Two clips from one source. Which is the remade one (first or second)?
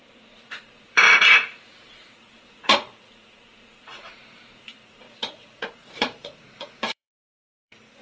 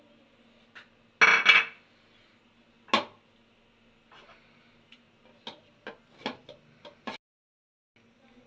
first